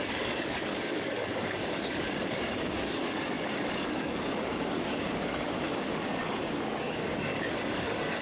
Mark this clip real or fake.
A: fake